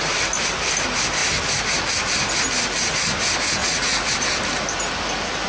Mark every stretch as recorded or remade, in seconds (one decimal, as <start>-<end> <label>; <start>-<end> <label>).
0.0-3.6 recorded; 3.6-4.1 remade; 4.1-5.5 recorded